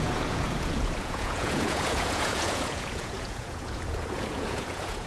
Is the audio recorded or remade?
remade